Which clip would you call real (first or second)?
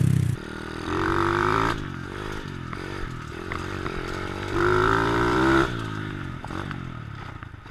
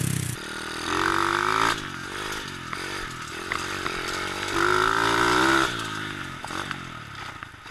second